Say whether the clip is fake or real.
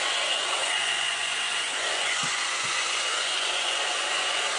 fake